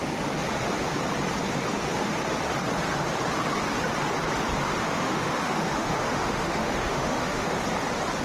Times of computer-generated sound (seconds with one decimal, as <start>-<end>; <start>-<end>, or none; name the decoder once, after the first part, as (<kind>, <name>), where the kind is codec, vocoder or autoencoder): 4.8-7.6 (autoencoder, DAC-VAE)